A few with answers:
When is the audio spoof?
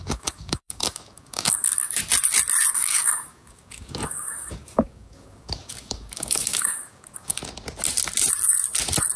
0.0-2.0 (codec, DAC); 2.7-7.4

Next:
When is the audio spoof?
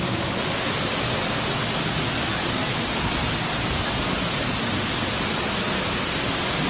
none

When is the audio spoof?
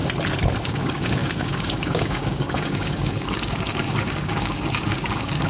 0.6-5.5 (codec, DAC)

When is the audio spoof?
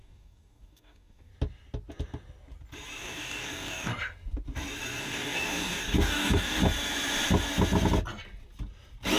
0.0-1.3 (codec, DAC); 3.0-3.9; 5.0-6.6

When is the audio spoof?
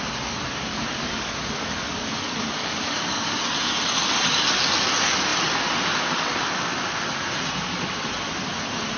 0.7-3.4 (codec, DAC)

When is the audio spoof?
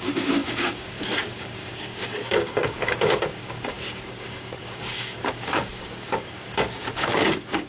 0.0-7.7 (codec, DAC)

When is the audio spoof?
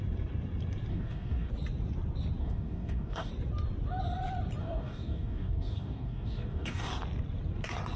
0.9-1.5 (codec, DAC); 2.4-3.3; 4.6-6.9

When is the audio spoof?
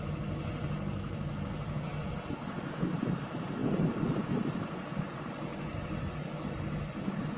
none